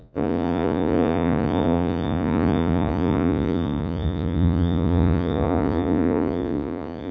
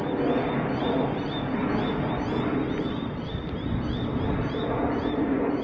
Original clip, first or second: second